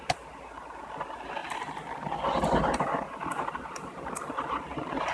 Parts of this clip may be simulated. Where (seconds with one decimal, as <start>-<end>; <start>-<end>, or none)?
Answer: 1.4-4.5